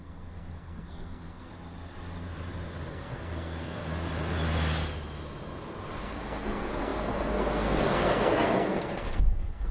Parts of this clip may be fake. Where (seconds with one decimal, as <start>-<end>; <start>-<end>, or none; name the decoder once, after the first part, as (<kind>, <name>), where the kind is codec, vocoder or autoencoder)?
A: 0.0-1.5 (codec, SNAC); 2.9-3.8; 6.0-9.7